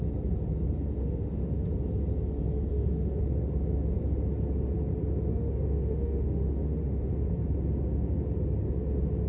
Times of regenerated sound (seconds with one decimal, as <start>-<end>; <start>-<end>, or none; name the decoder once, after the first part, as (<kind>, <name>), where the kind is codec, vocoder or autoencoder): 1.0-1.7 (autoencoder, DAC-VAE); 2.7-3.2; 5.3-7.1